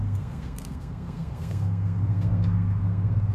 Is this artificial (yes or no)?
yes